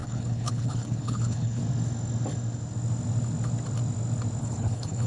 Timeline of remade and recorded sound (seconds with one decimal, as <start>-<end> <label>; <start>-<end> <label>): 0.0-1.6 remade; 1.6-4.4 recorded; 4.4-5.1 remade